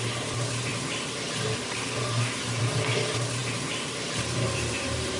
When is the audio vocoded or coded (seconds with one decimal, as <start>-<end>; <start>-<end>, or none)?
none